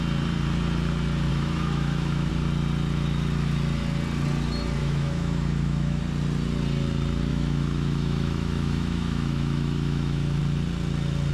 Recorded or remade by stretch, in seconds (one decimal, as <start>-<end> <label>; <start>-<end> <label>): 0.0-1.3 recorded; 1.3-2.3 remade; 2.3-4.8 recorded; 4.8-6.0 remade; 6.0-7.3 recorded; 7.3-10.4 remade; 10.4-11.3 recorded